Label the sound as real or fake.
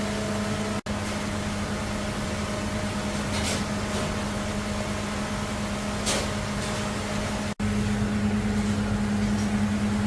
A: real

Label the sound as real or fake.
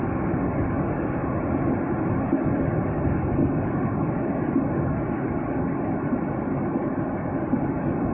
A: real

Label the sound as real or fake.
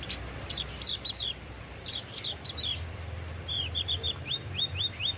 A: fake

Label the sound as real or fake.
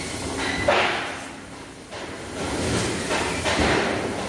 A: real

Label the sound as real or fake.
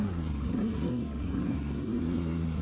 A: fake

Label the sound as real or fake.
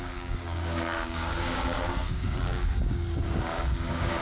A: fake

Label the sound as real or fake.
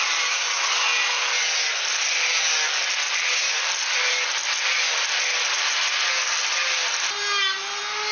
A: real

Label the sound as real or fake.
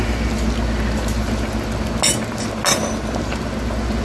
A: real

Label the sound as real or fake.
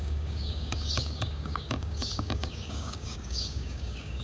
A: fake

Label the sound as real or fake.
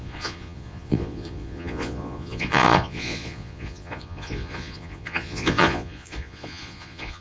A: fake